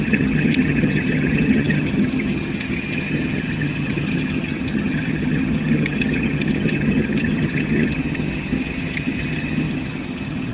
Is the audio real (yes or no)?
no